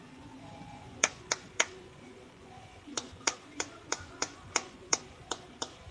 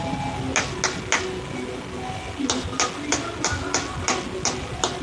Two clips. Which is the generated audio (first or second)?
first